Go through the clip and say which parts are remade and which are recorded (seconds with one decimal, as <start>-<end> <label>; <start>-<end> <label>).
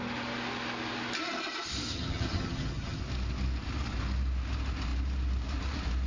0.0-1.9 recorded; 1.9-3.0 remade; 3.0-6.1 recorded